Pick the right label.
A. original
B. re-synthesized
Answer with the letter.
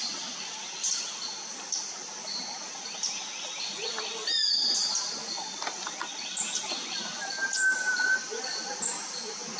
A